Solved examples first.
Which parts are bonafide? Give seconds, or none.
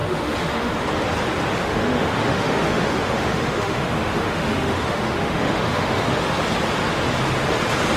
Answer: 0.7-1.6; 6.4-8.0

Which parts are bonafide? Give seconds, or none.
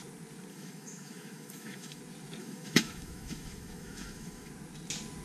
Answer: 0.0-0.5; 2.0-2.4; 4.5-5.2